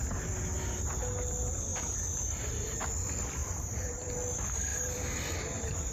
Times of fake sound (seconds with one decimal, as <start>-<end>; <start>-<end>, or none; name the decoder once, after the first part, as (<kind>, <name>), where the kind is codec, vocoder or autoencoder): 1.7-2.8 (vocoder, BigVGAN v2); 3.4-4.1; 4.7-5.2